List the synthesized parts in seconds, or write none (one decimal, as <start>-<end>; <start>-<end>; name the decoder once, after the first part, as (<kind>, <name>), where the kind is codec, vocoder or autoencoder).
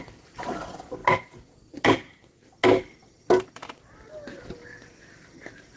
none